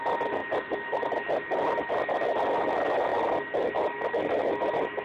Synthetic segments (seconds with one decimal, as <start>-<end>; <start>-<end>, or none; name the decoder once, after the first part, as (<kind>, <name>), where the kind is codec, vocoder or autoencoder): none